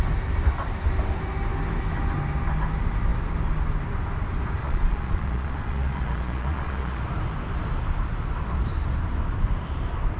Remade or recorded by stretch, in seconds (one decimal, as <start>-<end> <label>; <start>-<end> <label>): 0.0-4.6 recorded; 4.6-7.0 remade; 7.0-10.2 recorded